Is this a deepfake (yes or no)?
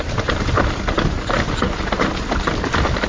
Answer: no